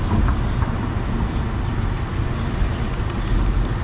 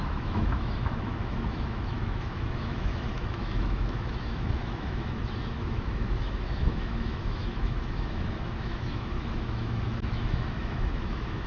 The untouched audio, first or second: first